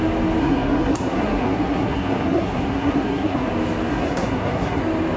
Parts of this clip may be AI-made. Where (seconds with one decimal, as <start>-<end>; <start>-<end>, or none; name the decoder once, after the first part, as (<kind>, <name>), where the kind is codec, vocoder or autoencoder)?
0.4-3.5 (codec, SNAC); 3.9-4.8